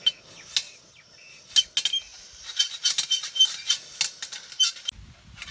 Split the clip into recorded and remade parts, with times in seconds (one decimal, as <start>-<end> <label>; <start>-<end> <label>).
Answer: 0.0-0.6 recorded; 0.6-1.5 remade; 1.5-5.5 recorded